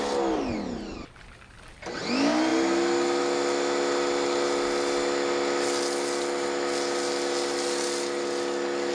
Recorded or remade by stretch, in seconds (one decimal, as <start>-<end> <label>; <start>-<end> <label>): 0.0-8.9 recorded